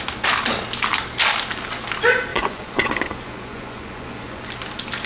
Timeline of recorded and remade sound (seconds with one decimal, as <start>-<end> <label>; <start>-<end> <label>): 0.0-2.3 recorded; 2.3-4.4 remade; 4.4-5.1 recorded

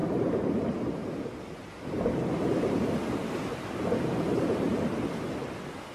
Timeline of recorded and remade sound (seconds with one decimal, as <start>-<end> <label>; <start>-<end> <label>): 0.0-5.9 recorded

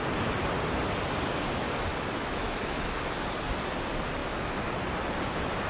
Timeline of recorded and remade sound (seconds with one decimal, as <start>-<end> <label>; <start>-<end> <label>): 0.0-1.9 recorded; 1.9-2.9 remade; 2.9-5.7 recorded

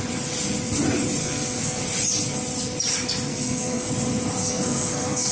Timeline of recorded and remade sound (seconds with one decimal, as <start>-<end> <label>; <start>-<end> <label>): 0.0-1.2 recorded; 1.2-1.8 remade; 1.8-3.3 recorded; 3.3-3.9 remade; 3.9-4.4 recorded; 4.4-5.3 remade

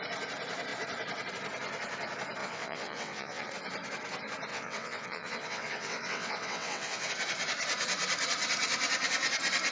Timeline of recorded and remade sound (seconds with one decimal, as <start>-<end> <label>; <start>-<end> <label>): 0.0-2.4 recorded; 2.4-3.5 remade; 3.5-4.5 recorded; 4.5-7.1 remade; 7.1-9.7 recorded

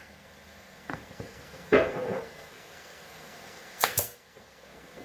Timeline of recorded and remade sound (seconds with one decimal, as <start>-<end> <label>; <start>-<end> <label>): 0.0-5.0 remade